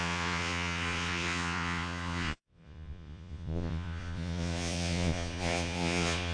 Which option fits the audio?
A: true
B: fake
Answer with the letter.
B